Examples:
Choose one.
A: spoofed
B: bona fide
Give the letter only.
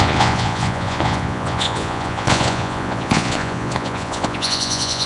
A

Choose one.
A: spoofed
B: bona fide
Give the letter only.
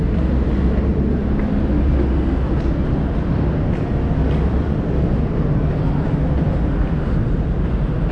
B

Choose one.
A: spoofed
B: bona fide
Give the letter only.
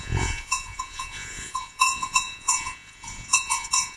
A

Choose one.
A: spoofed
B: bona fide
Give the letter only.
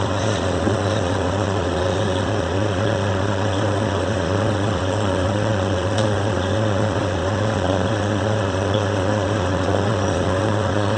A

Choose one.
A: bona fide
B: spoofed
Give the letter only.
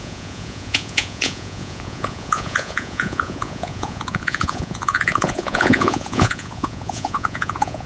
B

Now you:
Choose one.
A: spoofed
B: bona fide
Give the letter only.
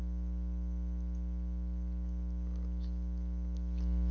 B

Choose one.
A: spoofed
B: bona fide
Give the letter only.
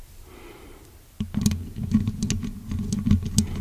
B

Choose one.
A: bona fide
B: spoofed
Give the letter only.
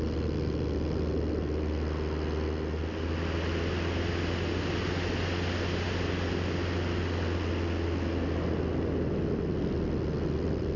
A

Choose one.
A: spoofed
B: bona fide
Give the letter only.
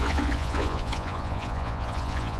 A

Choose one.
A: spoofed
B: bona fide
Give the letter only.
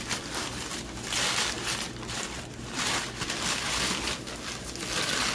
B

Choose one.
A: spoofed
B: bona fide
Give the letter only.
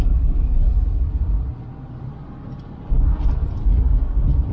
B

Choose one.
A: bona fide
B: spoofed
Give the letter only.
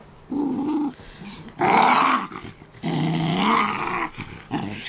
A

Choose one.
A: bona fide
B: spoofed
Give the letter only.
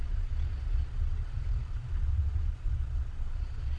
B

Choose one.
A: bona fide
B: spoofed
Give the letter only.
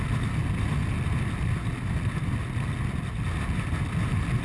A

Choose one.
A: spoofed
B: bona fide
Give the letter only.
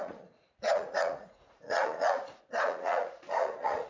A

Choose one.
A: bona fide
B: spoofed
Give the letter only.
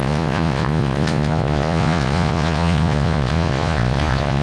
B